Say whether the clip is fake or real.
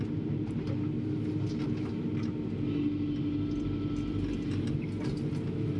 real